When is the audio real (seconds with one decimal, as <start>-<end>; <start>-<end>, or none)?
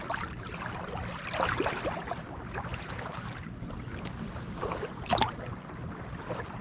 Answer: 0.0-6.6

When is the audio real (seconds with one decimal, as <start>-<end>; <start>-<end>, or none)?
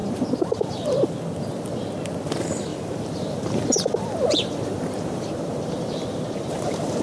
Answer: 1.0-2.7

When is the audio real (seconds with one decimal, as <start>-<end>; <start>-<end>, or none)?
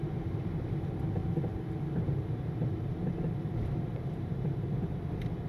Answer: 0.0-1.2; 4.5-5.5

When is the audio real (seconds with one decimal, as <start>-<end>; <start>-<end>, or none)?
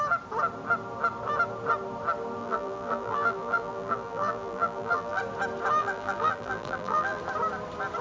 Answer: 0.0-2.4; 5.2-5.8; 7.2-8.0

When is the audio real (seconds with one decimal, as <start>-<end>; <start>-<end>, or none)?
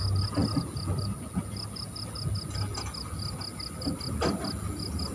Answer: 0.0-5.1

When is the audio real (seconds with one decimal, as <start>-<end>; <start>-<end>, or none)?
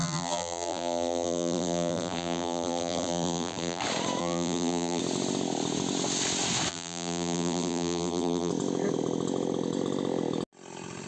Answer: 3.8-4.2; 5.0-6.7; 8.5-11.1